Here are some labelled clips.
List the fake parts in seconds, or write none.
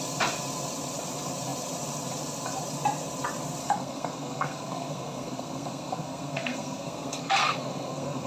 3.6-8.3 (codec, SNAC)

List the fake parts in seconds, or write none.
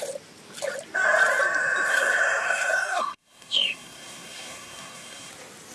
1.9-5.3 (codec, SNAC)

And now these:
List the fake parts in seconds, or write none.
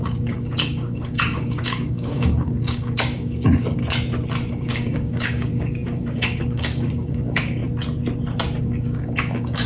0.0-3.8 (codec, DAC); 4.5-7.6; 8.6-9.7